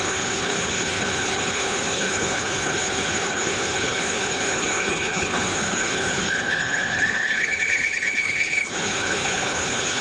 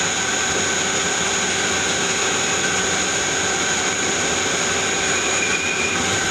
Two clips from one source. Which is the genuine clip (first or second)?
second